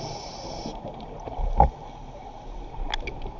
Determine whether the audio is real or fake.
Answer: real